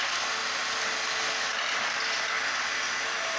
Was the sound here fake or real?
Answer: real